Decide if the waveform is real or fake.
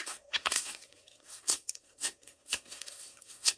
fake